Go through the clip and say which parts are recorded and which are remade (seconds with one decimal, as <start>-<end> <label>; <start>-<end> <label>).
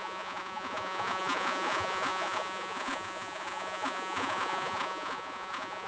0.0-5.9 remade